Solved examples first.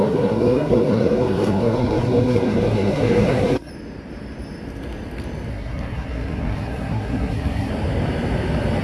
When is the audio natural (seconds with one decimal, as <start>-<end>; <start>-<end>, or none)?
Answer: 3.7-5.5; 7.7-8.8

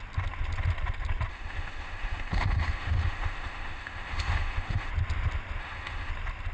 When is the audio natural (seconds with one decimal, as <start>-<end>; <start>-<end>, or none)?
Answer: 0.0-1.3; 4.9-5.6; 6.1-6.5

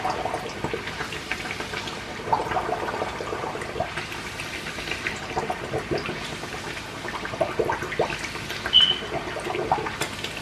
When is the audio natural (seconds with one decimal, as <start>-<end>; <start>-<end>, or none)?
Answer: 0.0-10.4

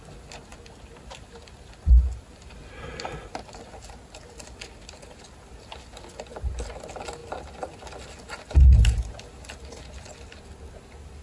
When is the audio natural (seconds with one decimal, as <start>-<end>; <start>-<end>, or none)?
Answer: 0.0-11.2

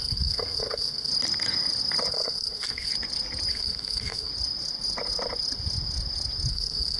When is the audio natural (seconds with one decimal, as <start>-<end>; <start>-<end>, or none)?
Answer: 1.1-2.1; 2.9-3.5; 4.3-6.5

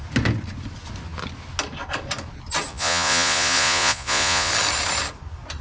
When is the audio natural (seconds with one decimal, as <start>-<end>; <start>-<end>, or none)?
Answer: 0.0-2.7; 4.5-5.6

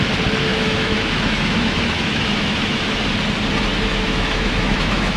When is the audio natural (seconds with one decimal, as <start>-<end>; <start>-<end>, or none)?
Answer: 0.0-0.5; 3.0-3.7

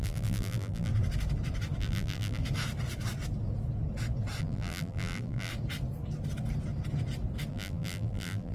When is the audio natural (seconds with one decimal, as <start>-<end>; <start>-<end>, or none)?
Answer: 0.9-1.8; 2.4-4.4; 5.5-7.5